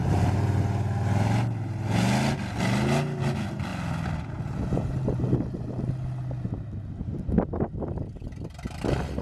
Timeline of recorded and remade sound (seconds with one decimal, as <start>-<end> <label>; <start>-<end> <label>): 0.0-9.2 recorded